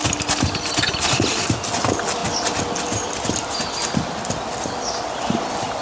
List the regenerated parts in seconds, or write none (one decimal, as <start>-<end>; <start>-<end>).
none